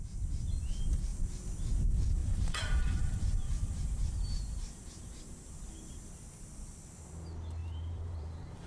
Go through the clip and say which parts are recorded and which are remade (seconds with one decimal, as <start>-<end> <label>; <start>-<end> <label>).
0.0-2.2 recorded; 2.2-6.1 remade; 6.1-7.6 recorded; 7.6-8.7 remade